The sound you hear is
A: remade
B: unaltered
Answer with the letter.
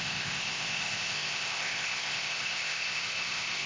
A